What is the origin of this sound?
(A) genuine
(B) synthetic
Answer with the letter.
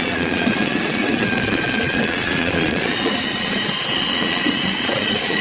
B